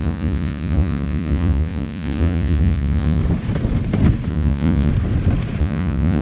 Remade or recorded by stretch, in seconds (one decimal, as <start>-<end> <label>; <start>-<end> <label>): 0.0-3.2 remade; 3.2-4.3 recorded; 4.3-4.9 remade; 4.9-5.6 recorded; 5.6-6.2 remade